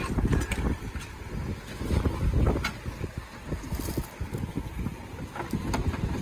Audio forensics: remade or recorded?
recorded